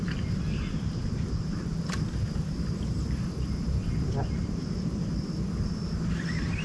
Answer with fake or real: real